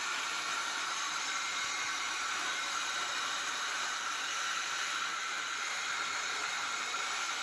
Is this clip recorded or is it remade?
remade